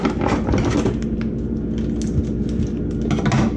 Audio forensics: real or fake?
real